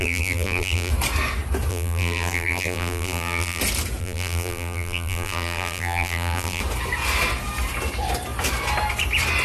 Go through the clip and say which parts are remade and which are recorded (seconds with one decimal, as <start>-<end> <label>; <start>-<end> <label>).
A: 0.0-0.9 remade; 0.9-1.7 recorded; 1.7-3.6 remade; 3.6-4.0 recorded; 4.0-6.6 remade; 6.6-9.4 recorded